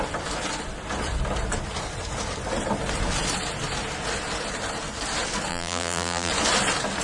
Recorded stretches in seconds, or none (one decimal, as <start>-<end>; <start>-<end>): 0.0-5.5; 6.3-7.0